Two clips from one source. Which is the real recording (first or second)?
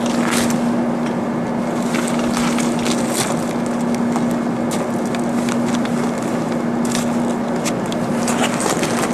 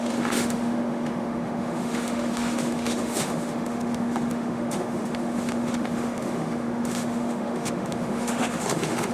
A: first